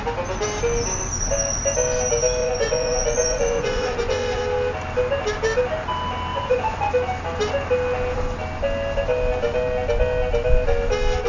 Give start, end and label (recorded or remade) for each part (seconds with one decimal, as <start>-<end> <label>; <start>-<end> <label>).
0.0-2.4 recorded; 2.4-4.4 remade; 4.4-6.3 recorded; 6.3-6.9 remade; 6.9-11.3 recorded